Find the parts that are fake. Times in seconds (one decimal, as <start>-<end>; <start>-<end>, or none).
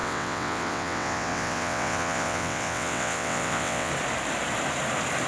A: 0.0-3.9